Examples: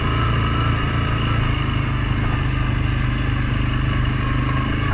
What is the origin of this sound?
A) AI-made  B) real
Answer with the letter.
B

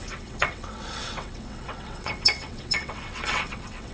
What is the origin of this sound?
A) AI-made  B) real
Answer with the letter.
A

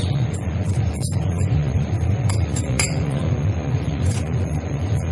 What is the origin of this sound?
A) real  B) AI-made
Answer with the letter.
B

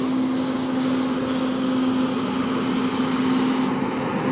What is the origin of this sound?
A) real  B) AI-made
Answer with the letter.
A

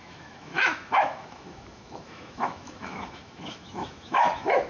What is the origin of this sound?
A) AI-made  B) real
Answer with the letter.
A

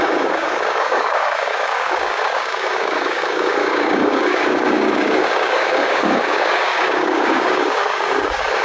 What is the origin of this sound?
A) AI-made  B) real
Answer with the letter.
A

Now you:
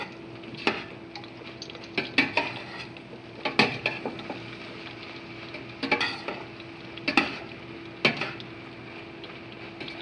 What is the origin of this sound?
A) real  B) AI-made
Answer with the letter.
A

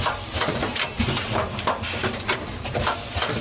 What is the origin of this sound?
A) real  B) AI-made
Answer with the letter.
B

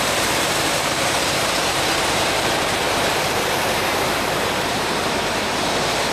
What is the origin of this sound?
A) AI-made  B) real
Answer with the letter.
A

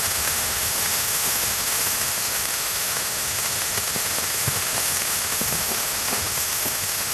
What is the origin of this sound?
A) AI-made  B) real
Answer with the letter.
A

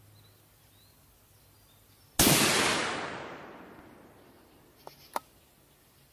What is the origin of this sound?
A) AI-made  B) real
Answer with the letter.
B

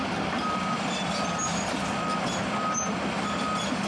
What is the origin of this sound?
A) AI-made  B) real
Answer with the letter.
B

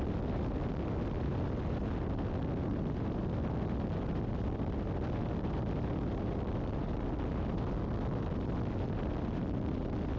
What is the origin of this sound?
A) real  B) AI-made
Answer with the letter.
A